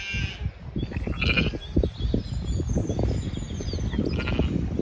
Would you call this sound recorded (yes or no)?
yes